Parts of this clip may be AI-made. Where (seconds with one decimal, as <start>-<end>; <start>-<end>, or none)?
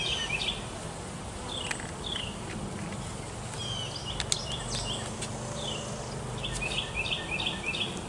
none